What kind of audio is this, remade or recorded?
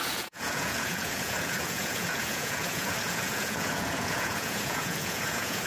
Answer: remade